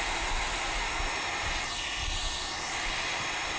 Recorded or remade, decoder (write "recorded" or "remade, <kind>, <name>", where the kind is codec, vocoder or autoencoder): recorded